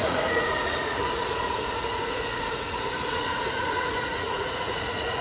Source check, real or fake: fake